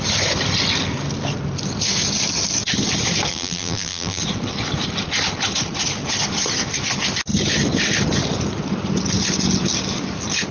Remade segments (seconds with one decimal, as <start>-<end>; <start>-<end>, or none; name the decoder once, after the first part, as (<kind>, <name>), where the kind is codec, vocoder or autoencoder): 3.3-4.2 (vocoder, BigVGAN v2)